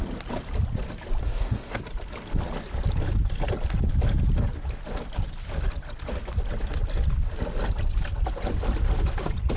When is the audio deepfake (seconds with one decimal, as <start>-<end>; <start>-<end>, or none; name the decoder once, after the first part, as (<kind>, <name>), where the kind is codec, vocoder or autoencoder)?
1.2-1.8 (codec, SNAC)